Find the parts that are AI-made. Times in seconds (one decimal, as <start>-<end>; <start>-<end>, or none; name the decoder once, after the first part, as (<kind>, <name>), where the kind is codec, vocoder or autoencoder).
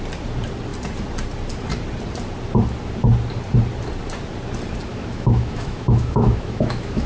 4.9-7.1 (autoencoder, DAC-VAE)